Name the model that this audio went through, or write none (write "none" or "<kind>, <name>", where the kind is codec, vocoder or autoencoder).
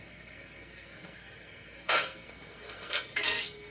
codec, SNAC